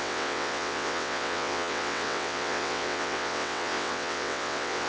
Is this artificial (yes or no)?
yes